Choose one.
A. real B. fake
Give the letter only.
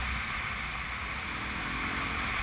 A